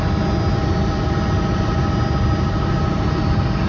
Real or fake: real